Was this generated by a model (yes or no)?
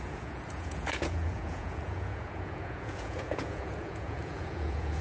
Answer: yes